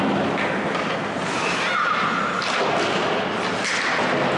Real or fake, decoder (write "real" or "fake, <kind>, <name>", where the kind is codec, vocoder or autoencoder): real